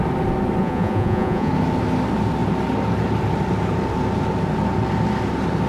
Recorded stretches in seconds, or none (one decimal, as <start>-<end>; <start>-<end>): 0.0-0.6; 1.5-5.7